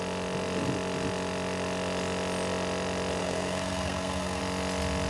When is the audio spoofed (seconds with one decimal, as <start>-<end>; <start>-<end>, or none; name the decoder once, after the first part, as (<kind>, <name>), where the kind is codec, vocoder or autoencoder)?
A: 3.2-4.4 (codec, SNAC)